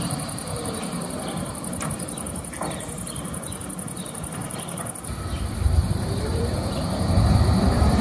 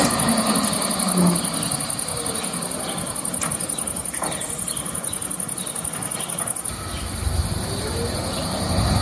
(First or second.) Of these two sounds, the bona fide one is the second